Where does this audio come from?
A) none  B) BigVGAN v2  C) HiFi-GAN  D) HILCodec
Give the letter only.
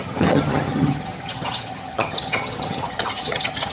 C